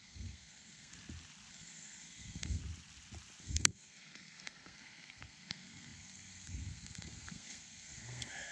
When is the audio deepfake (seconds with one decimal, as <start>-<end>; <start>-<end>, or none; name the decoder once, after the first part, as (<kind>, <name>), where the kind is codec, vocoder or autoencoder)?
0.0-0.9 (codec, SNAC); 1.5-2.6; 3.4-8.5